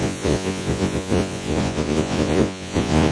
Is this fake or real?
fake